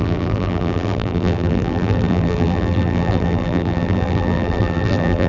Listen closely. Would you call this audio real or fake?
fake